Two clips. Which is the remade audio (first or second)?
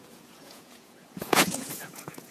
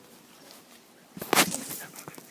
first